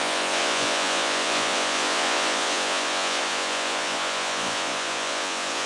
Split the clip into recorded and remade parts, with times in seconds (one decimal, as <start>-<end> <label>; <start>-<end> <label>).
0.0-5.7 remade